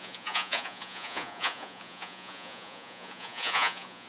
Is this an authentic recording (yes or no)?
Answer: no